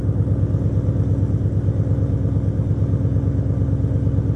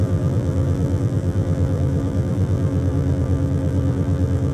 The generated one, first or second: second